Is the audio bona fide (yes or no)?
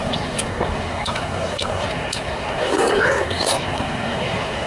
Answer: no